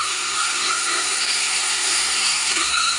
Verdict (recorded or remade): remade